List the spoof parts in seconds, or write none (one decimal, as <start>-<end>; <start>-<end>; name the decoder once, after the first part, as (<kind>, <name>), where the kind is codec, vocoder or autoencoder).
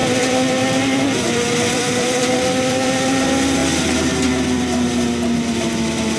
none